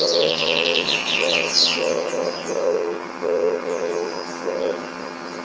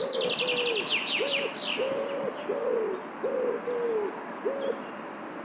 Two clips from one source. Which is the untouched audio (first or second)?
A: second